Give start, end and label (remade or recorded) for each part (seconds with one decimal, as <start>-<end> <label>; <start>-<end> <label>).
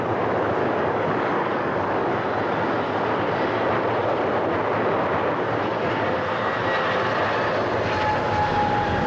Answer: 0.0-0.6 recorded; 0.6-2.1 remade; 2.1-9.1 recorded